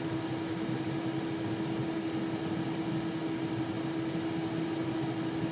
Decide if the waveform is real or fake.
real